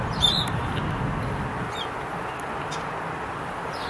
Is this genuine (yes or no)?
yes